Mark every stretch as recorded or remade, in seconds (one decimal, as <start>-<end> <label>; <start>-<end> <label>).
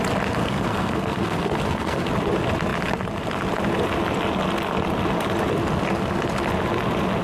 0.0-0.4 recorded; 0.4-2.1 remade; 2.1-7.2 recorded